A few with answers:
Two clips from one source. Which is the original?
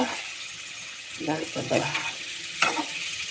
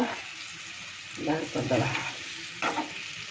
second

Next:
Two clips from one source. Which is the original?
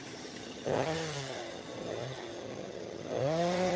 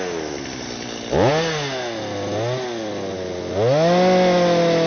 second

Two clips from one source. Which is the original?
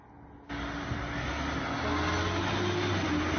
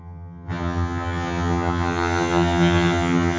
first